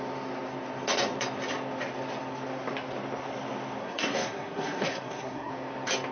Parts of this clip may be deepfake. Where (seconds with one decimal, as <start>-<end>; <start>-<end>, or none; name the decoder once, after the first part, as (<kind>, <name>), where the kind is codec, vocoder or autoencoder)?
3.8-5.5 (codec, SNAC)